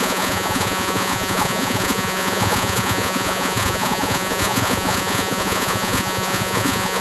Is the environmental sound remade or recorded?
remade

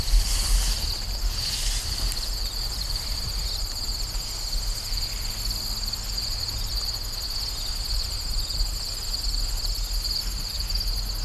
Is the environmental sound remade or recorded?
recorded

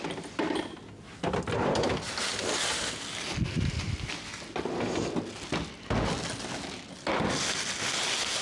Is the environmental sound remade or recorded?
recorded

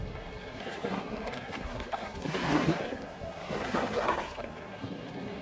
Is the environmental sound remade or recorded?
remade